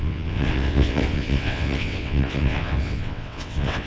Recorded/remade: remade